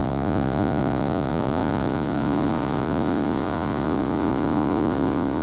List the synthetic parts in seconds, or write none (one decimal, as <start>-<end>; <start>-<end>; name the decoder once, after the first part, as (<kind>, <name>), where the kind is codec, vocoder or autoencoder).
0.0-5.4 (vocoder, Vocos)